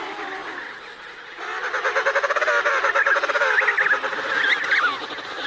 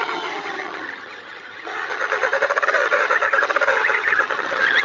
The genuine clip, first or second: first